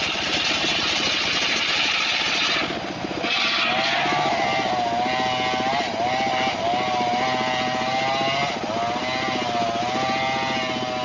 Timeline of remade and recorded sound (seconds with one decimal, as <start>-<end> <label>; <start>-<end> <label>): 0.0-11.0 recorded